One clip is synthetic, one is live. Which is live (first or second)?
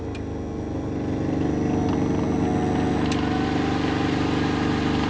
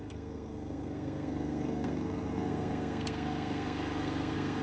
first